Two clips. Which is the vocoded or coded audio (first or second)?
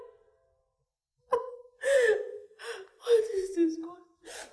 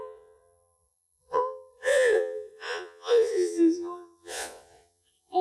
second